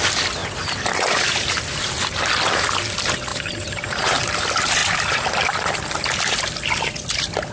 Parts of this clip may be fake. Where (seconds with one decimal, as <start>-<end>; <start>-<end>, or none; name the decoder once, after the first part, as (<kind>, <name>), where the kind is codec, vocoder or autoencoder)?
0.4-2.2 (vocoder, BigVGAN v2); 3.3-4.3; 4.8-5.7